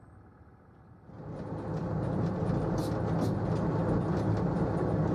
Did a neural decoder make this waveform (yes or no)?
no